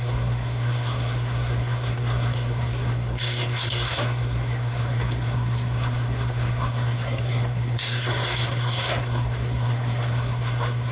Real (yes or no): no